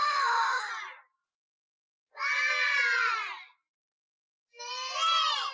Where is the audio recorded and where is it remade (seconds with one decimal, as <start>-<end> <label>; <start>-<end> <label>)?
0.0-0.7 remade; 0.7-5.5 recorded